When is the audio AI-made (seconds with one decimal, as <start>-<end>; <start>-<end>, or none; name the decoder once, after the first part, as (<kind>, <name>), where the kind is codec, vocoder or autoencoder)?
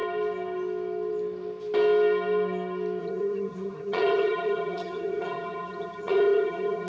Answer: 3.0-6.9 (vocoder, HiFi-GAN)